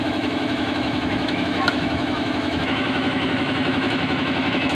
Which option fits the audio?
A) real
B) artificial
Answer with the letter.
B